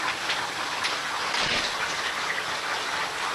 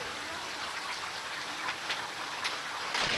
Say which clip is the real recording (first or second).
first